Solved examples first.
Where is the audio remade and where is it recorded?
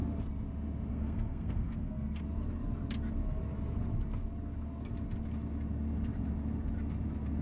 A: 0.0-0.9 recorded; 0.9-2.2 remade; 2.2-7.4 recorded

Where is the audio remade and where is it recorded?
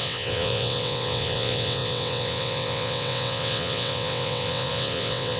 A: 0.0-5.4 remade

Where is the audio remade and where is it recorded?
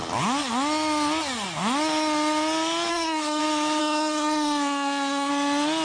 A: 0.0-2.9 recorded; 2.9-3.4 remade; 3.4-3.8 recorded; 3.8-5.3 remade; 5.3-5.8 recorded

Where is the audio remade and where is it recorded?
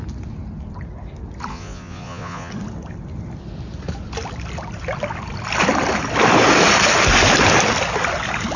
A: 0.0-1.5 recorded; 1.5-2.5 remade; 2.5-8.6 recorded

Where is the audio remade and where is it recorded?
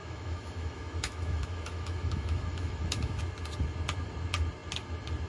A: 0.0-3.2 remade; 3.2-5.3 recorded